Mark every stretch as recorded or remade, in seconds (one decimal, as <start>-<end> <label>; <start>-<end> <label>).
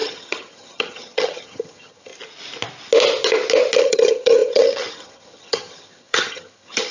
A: 0.0-2.1 remade; 2.1-3.8 recorded; 3.8-6.9 remade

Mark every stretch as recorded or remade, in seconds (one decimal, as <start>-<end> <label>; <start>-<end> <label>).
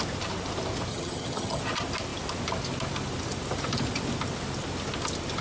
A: 0.0-0.9 recorded; 0.9-1.6 remade; 1.6-5.4 recorded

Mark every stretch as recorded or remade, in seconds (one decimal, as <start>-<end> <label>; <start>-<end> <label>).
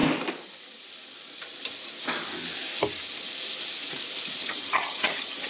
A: 0.0-4.4 recorded; 4.4-5.5 remade